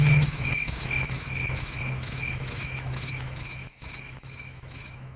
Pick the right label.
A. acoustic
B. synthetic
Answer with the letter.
B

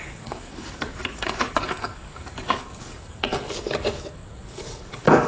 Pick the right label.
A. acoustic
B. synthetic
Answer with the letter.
B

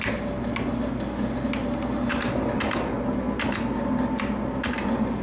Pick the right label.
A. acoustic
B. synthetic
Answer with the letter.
A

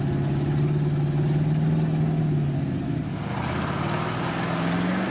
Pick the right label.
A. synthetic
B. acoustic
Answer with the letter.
B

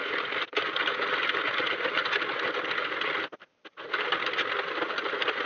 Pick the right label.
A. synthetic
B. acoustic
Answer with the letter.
B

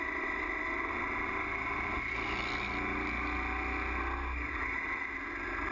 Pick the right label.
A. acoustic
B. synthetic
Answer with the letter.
A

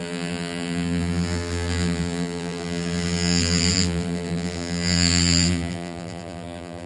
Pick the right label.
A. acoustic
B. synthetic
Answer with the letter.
B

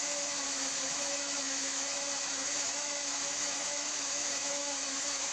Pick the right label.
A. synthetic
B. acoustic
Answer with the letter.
A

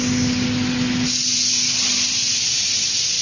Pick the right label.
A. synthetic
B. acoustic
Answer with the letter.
B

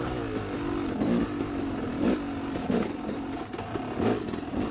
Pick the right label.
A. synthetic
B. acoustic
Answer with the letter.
B